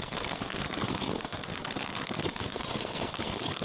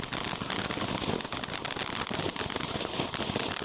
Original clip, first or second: second